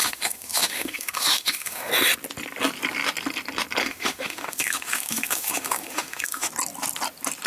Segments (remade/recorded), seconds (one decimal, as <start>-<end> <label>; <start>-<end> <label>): 0.0-1.9 remade; 1.9-3.8 recorded; 3.8-6.5 remade; 6.5-7.5 recorded